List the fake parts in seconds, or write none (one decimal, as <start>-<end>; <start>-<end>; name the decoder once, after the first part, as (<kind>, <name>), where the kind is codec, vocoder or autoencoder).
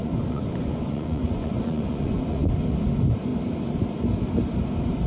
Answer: 0.0-2.5 (vocoder, Vocos)